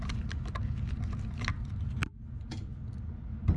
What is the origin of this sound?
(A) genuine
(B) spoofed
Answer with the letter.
A